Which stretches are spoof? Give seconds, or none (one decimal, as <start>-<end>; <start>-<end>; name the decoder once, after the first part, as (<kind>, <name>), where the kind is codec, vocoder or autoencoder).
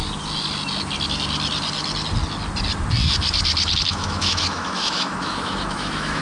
3.9-6.2 (autoencoder, DAC-VAE)